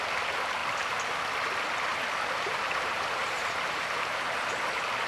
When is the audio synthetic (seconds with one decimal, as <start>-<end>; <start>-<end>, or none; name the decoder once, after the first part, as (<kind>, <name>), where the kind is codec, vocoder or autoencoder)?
1.9-4.5 (vocoder, BigVGAN v2)